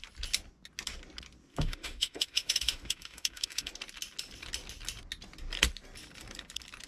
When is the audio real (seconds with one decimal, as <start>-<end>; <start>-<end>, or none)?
0.0-1.5; 3.7-6.9